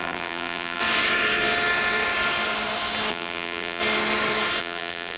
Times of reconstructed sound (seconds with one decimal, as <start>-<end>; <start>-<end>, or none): 0.0-0.8; 3.1-3.8; 4.6-5.2